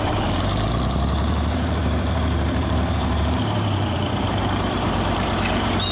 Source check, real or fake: fake